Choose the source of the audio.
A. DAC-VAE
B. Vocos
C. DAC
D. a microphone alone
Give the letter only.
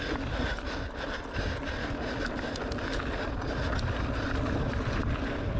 D